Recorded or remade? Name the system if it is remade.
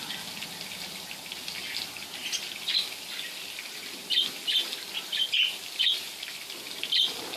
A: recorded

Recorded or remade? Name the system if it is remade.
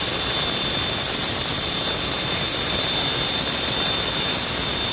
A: recorded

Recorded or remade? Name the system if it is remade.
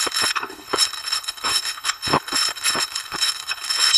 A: remade, codec, HILCodec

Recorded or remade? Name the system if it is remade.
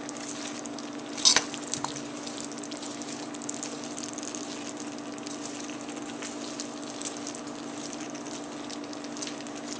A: recorded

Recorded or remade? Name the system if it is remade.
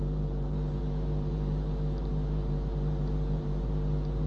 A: remade, vocoder, BigVGAN v2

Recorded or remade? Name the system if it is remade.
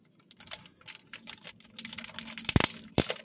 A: recorded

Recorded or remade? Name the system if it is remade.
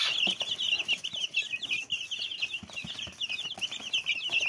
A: recorded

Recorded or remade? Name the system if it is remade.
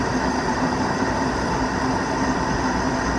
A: remade, vocoder, BigVGAN v2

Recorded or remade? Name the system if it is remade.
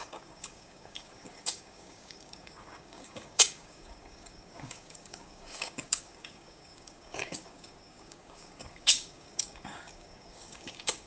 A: remade, codec, DAC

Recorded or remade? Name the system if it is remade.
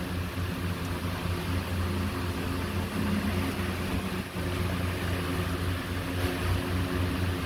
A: recorded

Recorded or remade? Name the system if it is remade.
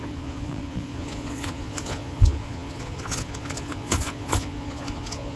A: remade, vocoder, Vocos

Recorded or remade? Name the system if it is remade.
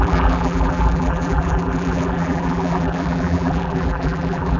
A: remade, vocoder, BigVGAN v2